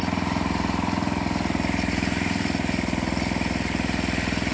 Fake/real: real